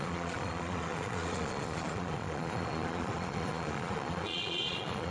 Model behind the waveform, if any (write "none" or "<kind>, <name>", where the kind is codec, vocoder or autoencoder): vocoder, Vocos